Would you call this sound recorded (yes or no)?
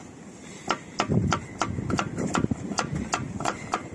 yes